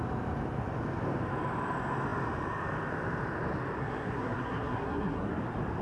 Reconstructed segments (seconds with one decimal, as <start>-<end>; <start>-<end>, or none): 3.8-5.3